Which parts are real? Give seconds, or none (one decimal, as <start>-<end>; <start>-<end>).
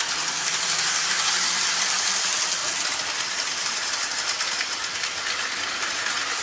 0.0-6.4